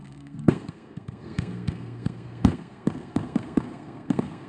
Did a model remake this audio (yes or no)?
yes